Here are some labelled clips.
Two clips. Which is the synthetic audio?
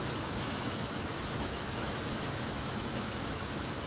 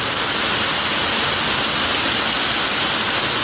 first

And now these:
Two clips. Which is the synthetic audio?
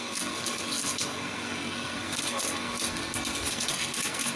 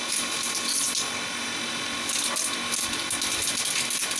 first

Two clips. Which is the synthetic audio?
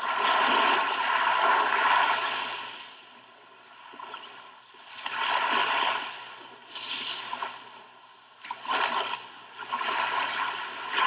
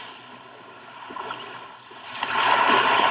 second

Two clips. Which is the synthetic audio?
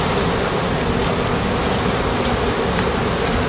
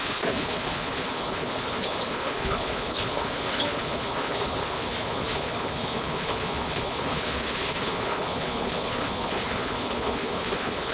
second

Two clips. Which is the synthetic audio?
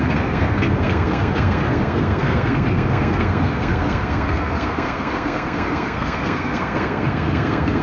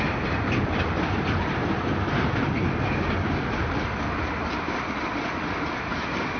first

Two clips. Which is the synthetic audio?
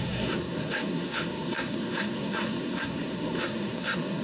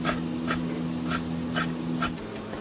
first